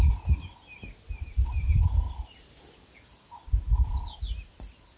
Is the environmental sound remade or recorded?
recorded